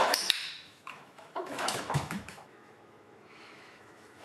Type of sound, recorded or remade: remade